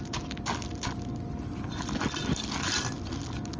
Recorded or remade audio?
recorded